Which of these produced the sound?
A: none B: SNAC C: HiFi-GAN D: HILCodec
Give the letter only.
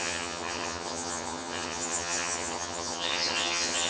C